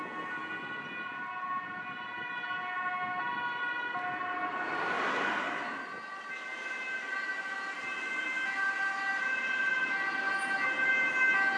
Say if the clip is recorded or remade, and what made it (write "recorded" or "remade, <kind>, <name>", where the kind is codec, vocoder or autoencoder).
recorded